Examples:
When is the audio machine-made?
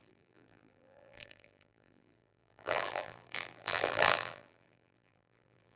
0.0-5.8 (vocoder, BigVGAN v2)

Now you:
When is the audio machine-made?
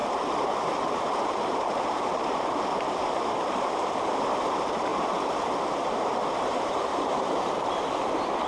0.6-8.5 (vocoder, BigVGAN v2)